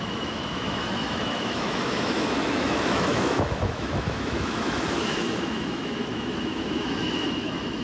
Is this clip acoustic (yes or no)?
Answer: no